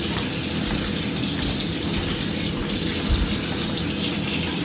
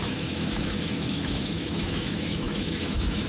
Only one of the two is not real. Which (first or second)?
second